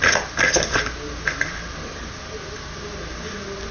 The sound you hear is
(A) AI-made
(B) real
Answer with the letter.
B